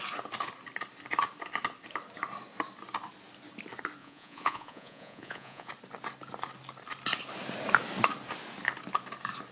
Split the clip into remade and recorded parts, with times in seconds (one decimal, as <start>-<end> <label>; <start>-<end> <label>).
0.0-4.0 recorded; 4.0-5.7 remade; 5.7-9.5 recorded